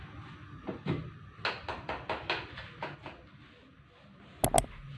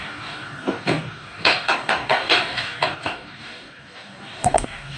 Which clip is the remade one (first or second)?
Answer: second